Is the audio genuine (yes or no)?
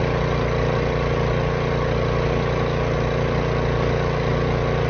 yes